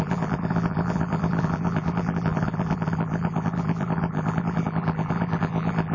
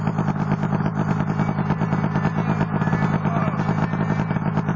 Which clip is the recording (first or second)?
second